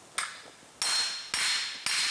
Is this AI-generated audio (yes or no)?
no